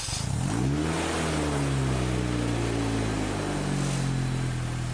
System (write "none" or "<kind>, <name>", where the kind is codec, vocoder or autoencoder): none